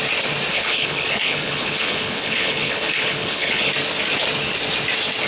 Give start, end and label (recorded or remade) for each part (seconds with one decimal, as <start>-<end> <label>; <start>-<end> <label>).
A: 0.0-0.5 recorded; 0.5-3.7 remade; 3.7-5.3 recorded